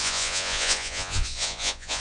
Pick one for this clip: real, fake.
fake